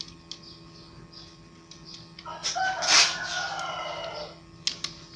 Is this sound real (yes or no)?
yes